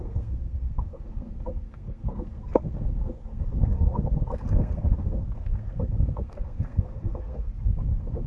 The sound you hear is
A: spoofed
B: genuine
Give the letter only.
A